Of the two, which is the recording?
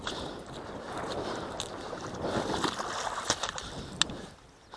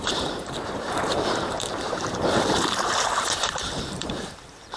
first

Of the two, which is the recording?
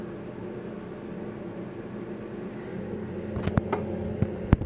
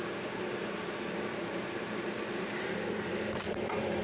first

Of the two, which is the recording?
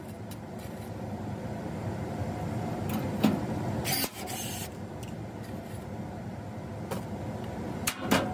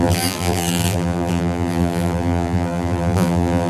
first